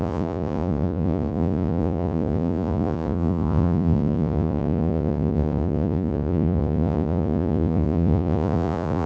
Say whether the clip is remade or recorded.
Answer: remade